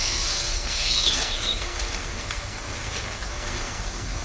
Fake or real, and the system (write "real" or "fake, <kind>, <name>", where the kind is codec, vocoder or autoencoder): fake, codec, SNAC